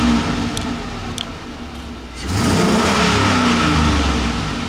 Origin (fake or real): real